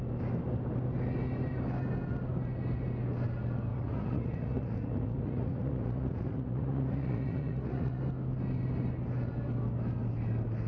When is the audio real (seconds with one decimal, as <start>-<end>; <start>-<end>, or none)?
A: 0.0-3.7; 8.0-10.7